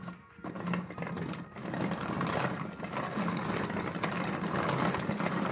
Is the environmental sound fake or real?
real